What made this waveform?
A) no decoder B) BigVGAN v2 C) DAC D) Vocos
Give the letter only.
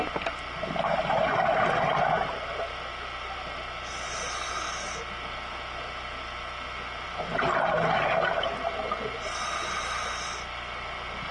A